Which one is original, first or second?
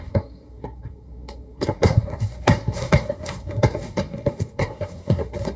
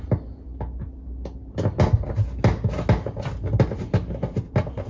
second